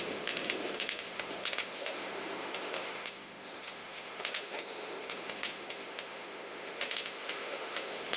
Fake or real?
fake